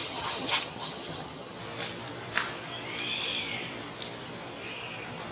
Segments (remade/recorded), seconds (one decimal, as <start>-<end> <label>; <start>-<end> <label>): 0.0-1.6 remade; 1.6-5.3 recorded